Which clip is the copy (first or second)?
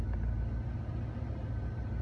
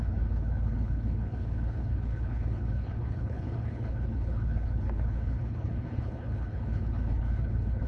second